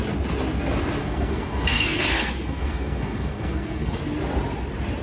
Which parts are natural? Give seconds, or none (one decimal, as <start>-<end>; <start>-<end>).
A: 0.0-1.0; 4.0-5.0